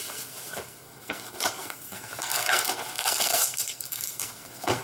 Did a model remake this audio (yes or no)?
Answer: yes